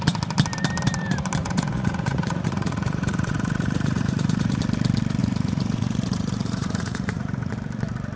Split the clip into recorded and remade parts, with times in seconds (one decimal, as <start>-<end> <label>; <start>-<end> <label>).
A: 0.0-1.4 recorded; 1.4-4.6 remade; 4.6-5.2 recorded; 5.2-7.5 remade; 7.5-8.2 recorded